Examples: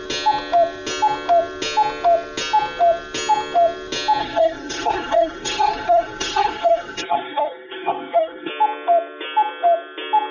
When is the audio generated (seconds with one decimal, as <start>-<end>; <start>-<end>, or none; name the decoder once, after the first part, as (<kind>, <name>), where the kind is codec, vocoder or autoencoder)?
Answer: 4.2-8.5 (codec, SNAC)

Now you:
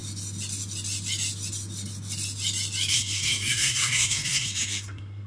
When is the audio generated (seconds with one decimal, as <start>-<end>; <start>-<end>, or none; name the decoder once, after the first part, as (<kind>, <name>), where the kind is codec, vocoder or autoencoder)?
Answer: 2.9-5.3 (codec, SNAC)

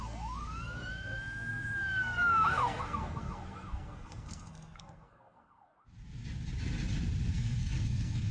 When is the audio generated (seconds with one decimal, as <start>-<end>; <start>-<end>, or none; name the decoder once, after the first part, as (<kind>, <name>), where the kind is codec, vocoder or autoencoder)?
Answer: 0.0-5.7 (codec, SNAC); 7.3-8.3

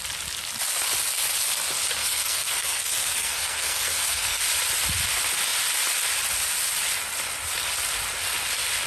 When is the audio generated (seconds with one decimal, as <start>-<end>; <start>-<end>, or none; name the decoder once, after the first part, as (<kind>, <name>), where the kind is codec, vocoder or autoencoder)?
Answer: 2.0-4.4 (codec, SNAC)

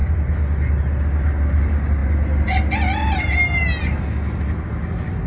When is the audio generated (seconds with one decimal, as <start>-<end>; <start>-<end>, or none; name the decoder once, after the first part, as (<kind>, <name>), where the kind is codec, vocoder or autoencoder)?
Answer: none

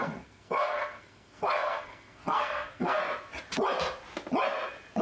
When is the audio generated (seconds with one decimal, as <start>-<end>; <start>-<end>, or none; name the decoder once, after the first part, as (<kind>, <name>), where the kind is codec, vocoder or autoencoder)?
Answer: 0.0-3.0 (codec, SNAC)